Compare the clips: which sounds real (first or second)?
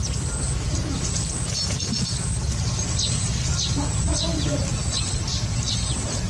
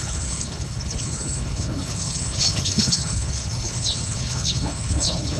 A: first